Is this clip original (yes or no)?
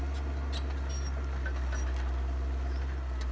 yes